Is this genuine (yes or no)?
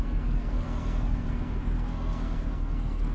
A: no